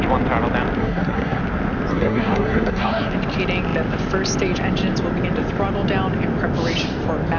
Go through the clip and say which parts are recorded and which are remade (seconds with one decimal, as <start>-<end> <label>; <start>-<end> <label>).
0.0-0.8 recorded; 0.8-1.4 remade; 1.4-1.9 recorded; 1.9-3.1 remade; 3.1-7.4 recorded